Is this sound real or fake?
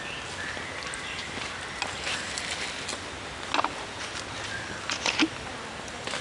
real